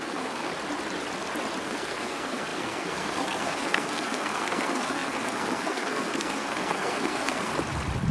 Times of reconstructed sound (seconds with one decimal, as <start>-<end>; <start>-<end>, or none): 0.0-0.5; 1.6-7.5